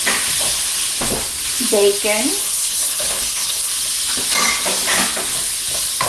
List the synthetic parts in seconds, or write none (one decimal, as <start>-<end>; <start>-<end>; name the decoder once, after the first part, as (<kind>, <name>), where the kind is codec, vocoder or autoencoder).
2.4-3.7 (codec, HILCodec)